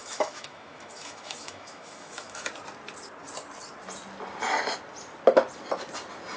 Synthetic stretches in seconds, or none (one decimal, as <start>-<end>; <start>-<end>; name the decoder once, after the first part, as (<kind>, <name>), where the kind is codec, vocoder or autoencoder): 0.0-2.5 (autoencoder, DAC-VAE)